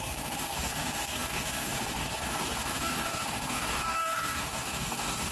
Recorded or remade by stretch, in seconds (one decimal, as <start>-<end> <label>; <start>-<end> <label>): 0.0-5.3 remade